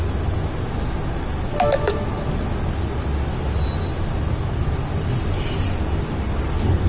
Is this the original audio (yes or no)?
yes